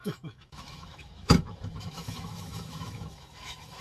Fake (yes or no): yes